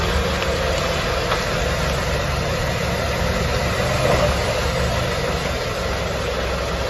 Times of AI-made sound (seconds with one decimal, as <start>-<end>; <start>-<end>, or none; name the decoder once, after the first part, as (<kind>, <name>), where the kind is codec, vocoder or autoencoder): none